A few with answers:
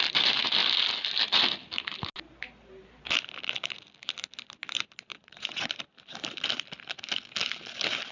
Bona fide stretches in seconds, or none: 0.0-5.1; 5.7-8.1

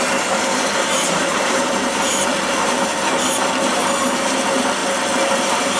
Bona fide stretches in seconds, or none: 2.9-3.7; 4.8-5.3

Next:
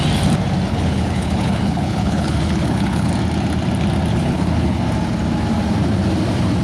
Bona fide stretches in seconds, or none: 0.0-0.7; 3.1-4.1; 4.8-6.6